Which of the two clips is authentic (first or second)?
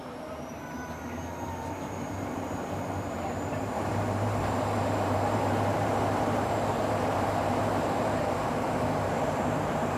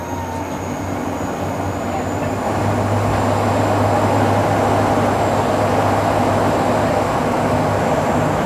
second